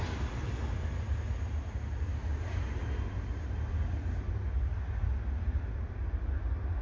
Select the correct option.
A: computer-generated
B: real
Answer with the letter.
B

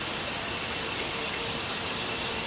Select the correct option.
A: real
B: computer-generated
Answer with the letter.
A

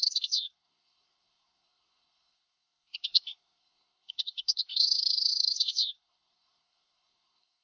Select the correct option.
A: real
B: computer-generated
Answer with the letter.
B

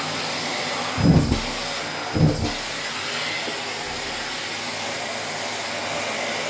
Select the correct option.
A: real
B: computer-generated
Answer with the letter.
A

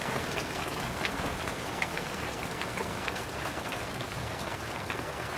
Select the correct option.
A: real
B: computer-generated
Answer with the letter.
B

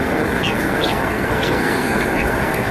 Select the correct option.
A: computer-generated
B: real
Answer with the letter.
A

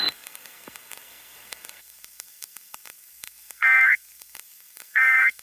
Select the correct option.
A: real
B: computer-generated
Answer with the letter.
B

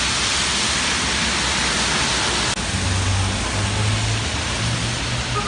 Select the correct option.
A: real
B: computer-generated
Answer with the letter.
A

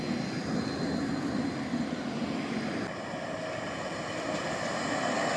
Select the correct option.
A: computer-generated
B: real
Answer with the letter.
B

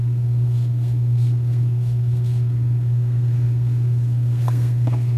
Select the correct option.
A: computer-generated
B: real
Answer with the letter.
A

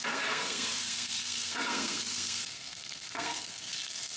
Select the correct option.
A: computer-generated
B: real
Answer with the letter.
A